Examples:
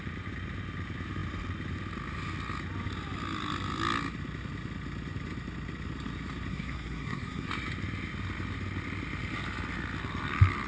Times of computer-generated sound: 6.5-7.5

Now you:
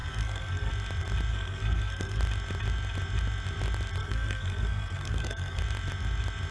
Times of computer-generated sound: 0.0-0.7; 1.3-2.2; 4.0-5.6

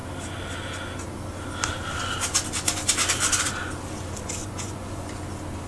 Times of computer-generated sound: 4.4-5.0

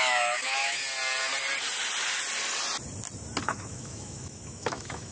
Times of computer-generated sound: 0.0-0.8; 3.4-5.1

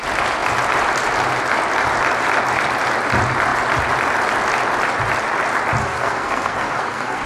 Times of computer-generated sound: 5.8-7.3

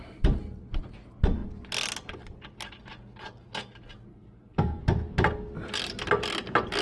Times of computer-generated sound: 4.1-4.8

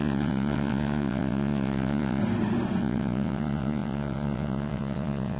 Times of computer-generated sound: 0.0-2.2; 2.8-5.4

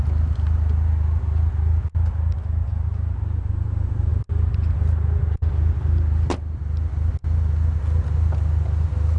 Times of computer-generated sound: none